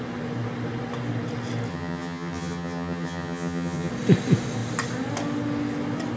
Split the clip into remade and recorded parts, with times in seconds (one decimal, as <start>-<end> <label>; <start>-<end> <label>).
0.0-1.7 recorded; 1.7-3.9 remade; 3.9-6.2 recorded